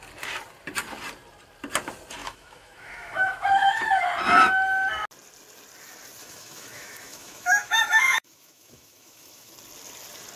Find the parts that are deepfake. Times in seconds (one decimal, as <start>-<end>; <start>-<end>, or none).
2.2-4.0; 6.2-9.5